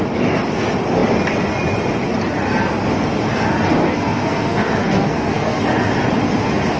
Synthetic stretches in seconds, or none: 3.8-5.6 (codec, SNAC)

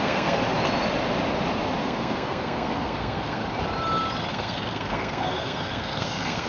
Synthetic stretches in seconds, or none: 0.0-0.4 (codec, SNAC); 1.8-3.4; 4.3-6.5

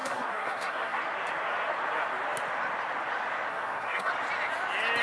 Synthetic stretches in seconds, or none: 0.0-1.0 (codec, SNAC); 3.5-4.1

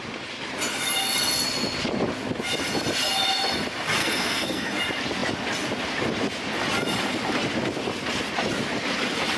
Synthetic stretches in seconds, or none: 4.0-4.8 (codec, SNAC)

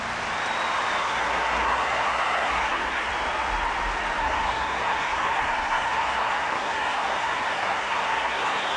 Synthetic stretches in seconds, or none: 1.0-3.1 (codec, SNAC); 4.2-8.8